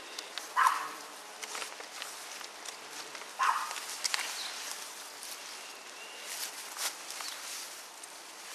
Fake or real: real